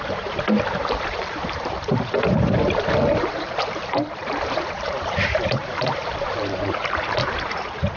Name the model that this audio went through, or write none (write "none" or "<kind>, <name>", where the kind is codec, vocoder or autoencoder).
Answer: vocoder, BigVGAN v2